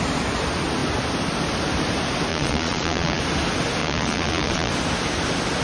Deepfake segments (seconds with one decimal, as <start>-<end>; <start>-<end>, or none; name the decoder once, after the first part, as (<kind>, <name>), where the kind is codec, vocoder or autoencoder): 2.3-3.2 (vocoder, Vocos); 3.8-4.7